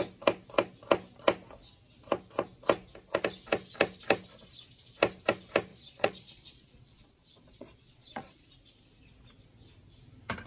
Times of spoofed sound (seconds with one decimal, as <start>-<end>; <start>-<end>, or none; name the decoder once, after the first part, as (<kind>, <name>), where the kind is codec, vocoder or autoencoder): 5.7-8.4 (vocoder, Vocos)